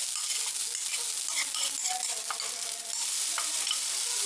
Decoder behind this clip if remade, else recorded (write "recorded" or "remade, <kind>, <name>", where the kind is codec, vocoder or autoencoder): recorded